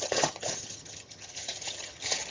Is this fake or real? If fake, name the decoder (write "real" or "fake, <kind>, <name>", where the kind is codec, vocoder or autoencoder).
fake, vocoder, HiFi-GAN